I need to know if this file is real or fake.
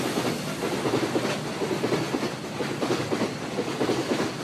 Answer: real